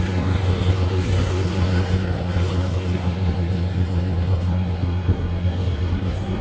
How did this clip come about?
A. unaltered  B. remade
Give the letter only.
B